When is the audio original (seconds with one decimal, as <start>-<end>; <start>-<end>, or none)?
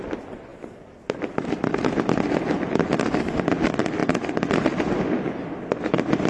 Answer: 0.0-0.5; 3.5-6.3